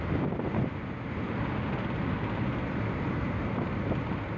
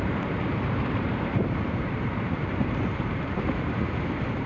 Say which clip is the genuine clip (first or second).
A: first